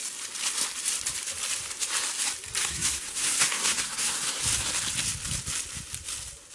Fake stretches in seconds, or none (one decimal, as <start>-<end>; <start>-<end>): 2.6-4.4